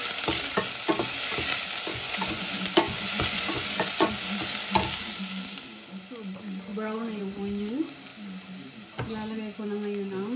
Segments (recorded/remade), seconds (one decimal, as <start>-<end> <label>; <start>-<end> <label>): 0.0-1.9 recorded; 1.9-4.1 remade; 4.1-10.4 recorded

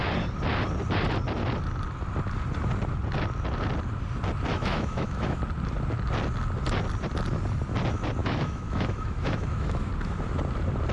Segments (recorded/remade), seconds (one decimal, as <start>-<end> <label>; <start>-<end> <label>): 0.0-4.5 recorded; 4.5-5.4 remade; 5.4-8.2 recorded; 8.2-9.9 remade; 9.9-10.9 recorded